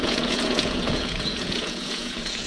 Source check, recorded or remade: remade